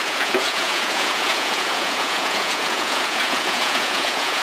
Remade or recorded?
remade